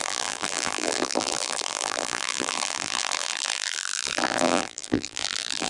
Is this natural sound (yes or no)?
no